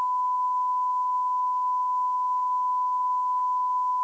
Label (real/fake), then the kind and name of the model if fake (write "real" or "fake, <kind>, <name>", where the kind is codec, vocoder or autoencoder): real